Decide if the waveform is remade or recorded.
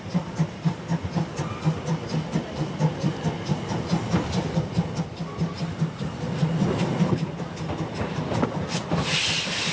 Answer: recorded